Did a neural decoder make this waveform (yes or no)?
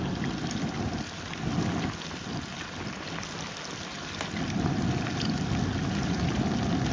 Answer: no